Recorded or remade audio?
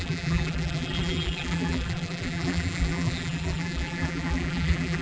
remade